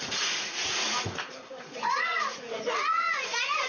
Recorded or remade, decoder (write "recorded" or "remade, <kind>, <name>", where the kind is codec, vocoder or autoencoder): remade, vocoder, Vocos